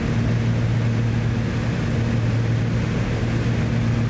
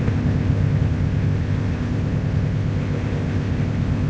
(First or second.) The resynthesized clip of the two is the second